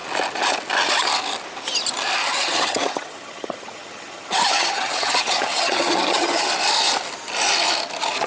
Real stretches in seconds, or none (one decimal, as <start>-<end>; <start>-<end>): 0.0-2.2; 6.5-8.3